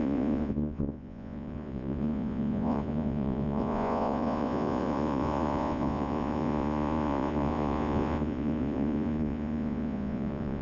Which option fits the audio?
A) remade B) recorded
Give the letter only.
A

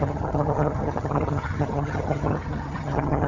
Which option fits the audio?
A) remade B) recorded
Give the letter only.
A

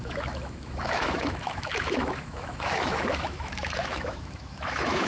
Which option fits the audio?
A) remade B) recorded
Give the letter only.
A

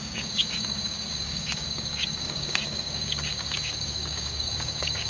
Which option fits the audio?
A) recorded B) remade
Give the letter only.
B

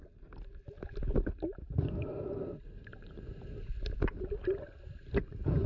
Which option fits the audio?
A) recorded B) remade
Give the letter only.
A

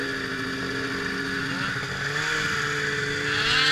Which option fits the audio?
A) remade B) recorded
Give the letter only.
B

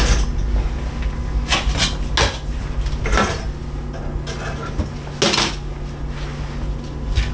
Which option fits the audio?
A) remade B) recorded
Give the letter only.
B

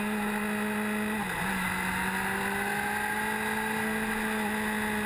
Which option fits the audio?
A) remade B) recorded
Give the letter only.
B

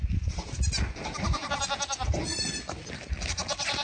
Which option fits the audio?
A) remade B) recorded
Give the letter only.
B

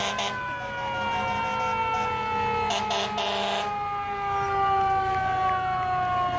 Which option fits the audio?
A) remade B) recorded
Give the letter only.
B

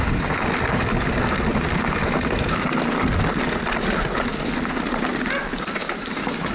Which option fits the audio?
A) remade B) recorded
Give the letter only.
B